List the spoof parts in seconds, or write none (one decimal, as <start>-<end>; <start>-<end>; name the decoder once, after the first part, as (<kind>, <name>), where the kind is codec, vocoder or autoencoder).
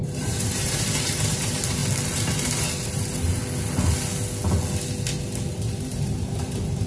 0.0-3.4 (vocoder, BigVGAN v2); 5.5-6.9